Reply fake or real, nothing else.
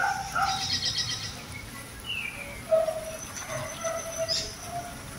real